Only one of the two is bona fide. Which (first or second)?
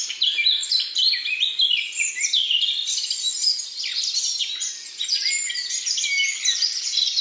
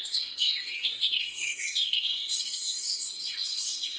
first